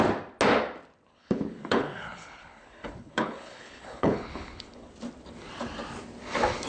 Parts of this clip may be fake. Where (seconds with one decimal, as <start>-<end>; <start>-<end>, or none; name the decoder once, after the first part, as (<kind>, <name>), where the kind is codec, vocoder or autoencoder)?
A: 1.1-4.9 (codec, HILCodec)